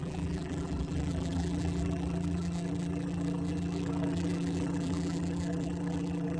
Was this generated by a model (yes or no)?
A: yes